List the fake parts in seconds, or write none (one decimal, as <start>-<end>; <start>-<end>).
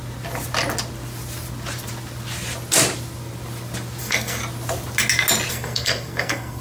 4.0-4.4; 5.5-6.6